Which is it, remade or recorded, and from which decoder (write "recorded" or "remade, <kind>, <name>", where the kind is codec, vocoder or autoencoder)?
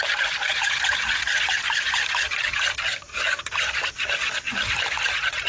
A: recorded